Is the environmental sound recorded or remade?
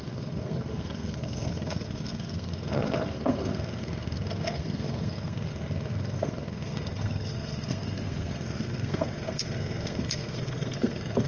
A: remade